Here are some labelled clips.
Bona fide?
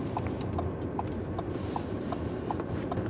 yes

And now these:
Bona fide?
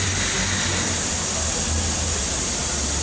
yes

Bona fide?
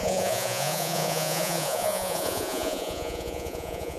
no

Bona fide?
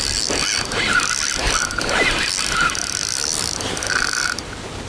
yes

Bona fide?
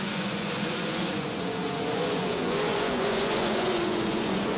no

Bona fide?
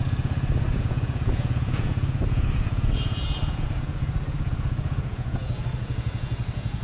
no